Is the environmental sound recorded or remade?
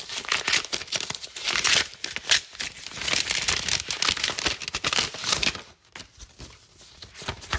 recorded